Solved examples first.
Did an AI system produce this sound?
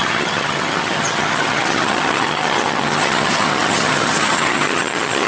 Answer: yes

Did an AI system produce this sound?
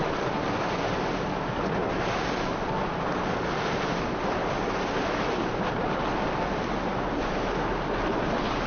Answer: no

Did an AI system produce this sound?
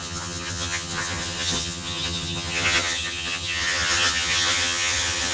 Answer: yes